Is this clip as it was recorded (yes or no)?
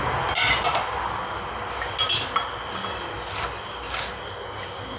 yes